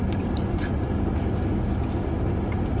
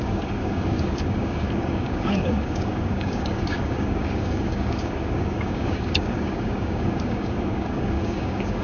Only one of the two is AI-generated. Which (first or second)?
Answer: second